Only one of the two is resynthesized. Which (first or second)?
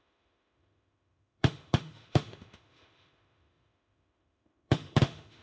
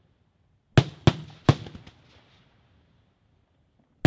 first